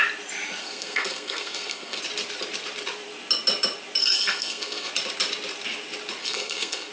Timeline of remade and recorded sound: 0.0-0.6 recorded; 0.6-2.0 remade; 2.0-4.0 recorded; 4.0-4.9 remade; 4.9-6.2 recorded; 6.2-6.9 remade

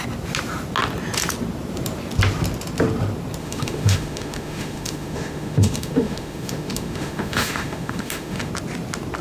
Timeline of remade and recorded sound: 0.0-3.4 recorded; 3.4-8.5 remade; 8.5-9.2 recorded

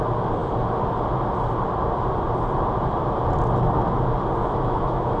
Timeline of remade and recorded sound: 0.0-4.4 recorded; 4.4-5.2 remade